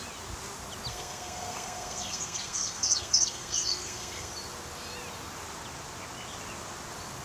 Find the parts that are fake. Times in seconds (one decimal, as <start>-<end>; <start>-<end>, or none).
0.9-4.3